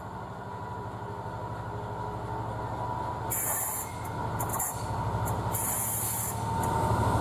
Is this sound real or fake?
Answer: real